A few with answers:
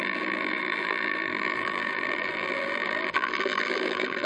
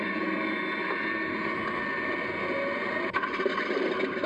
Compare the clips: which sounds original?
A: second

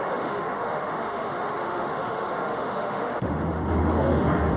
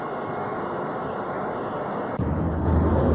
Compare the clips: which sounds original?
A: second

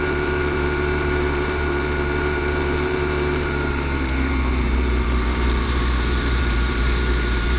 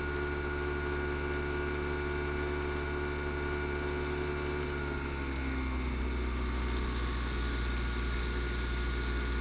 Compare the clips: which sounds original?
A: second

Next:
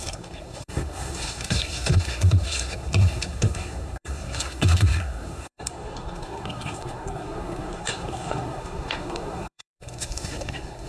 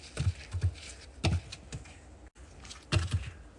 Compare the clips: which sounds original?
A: second